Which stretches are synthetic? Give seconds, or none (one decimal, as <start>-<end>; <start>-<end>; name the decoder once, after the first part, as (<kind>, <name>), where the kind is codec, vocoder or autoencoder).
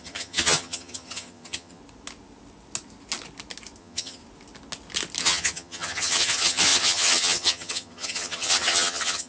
0.0-1.8 (vocoder, HiFi-GAN); 3.8-4.2; 5.2-9.3